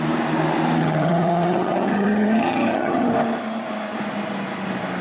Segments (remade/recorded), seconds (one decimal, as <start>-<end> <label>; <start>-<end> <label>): 0.0-0.8 recorded; 0.8-3.1 remade; 3.1-5.0 recorded